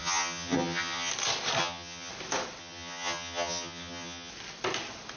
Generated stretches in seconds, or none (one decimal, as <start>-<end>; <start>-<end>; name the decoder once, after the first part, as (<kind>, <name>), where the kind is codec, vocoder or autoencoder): 0.0-1.1 (vocoder, HiFi-GAN); 1.6-2.1; 2.6-4.3